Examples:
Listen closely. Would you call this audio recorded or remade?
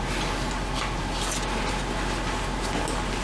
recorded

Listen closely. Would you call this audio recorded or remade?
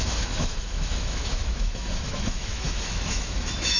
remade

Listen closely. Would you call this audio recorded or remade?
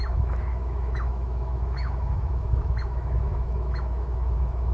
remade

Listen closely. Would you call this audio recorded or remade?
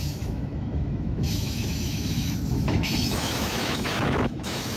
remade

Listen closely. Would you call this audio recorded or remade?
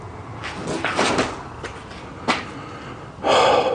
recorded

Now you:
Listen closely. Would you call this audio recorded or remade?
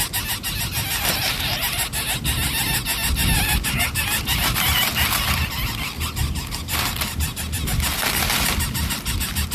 recorded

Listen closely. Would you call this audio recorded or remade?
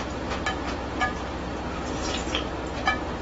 recorded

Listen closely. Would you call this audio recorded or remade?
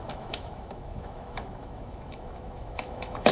remade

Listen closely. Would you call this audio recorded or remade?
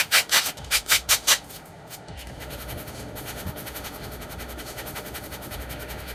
remade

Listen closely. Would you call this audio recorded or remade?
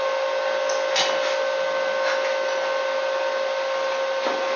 recorded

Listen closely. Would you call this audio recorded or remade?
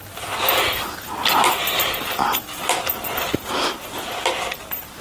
recorded